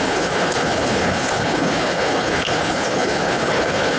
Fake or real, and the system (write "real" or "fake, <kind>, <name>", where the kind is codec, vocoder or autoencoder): fake, codec, HILCodec